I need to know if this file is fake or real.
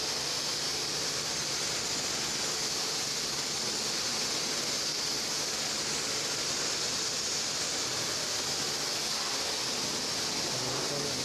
real